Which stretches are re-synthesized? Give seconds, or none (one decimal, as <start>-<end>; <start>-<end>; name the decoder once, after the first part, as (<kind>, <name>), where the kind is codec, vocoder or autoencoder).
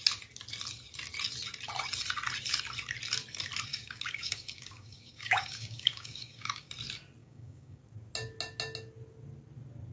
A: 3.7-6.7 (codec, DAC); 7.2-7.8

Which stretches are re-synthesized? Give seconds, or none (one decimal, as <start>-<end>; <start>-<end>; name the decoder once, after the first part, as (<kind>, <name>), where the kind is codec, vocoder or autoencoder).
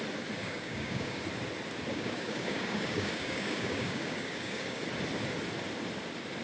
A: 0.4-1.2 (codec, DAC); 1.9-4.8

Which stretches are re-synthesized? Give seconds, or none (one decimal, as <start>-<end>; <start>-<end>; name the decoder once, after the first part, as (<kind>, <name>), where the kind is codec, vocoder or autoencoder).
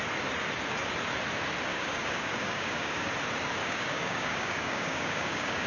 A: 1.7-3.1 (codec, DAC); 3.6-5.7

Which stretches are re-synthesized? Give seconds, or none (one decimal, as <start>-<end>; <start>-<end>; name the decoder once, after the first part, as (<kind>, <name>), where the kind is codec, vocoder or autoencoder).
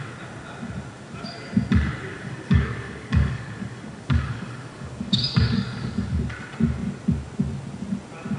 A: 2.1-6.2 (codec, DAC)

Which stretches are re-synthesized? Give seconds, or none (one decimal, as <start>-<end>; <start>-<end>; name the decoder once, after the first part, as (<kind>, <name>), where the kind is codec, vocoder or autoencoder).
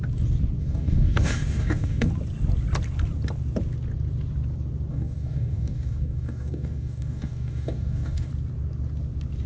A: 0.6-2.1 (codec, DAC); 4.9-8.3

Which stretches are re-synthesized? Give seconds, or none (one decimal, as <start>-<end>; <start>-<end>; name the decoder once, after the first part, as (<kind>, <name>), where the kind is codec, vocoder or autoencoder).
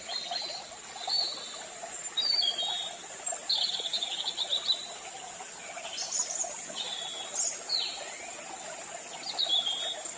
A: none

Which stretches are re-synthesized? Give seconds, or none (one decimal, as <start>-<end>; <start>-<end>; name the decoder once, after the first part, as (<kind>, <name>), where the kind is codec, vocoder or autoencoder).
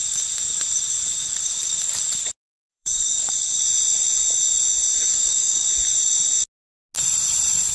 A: 1.2-1.8 (codec, DAC); 2.7-3.3; 5.1-5.7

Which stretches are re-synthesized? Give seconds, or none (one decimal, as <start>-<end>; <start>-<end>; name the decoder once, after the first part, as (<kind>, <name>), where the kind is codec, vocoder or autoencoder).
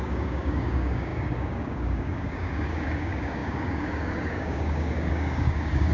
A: 0.0-5.9 (codec, DAC)